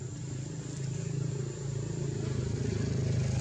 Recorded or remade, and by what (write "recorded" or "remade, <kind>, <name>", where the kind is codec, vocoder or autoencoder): recorded